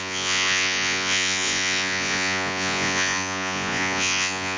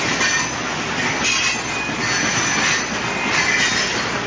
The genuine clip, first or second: second